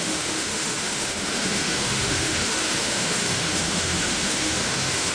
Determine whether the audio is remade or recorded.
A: remade